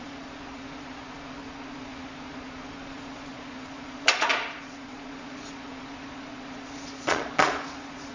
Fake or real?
fake